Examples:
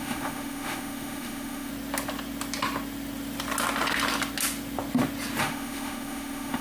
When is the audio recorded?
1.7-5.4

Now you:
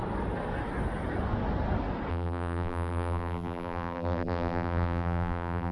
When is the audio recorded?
0.0-2.1

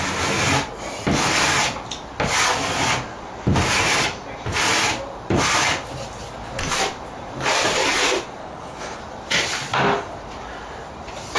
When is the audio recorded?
0.0-8.4; 9.0-11.4

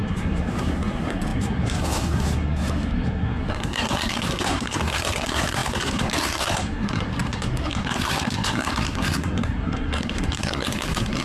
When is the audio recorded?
none

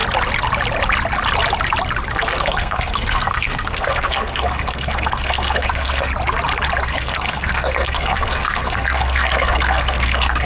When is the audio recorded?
0.0-2.1; 6.1-6.8